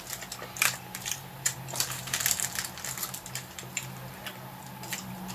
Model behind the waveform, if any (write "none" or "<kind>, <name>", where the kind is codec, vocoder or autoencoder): vocoder, BigVGAN v2